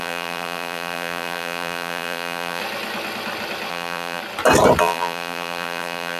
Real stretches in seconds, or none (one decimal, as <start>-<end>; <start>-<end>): 2.6-3.7; 4.2-4.8